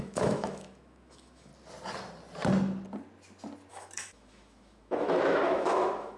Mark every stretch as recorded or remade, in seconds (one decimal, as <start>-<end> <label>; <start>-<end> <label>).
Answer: 0.0-1.5 remade; 1.5-3.7 recorded; 3.7-6.2 remade